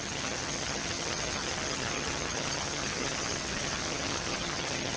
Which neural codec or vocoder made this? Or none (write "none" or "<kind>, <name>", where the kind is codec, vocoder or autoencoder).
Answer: vocoder, HiFi-GAN